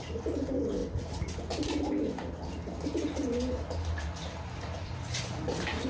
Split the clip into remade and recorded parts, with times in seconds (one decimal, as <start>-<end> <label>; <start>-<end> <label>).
0.0-5.9 recorded